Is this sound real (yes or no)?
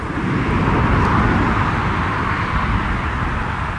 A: yes